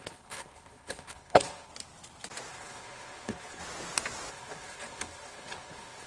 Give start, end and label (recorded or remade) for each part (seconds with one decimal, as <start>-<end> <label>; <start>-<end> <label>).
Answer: 0.0-1.7 remade; 1.7-2.5 recorded; 2.5-3.6 remade; 3.6-4.3 recorded; 4.3-6.1 remade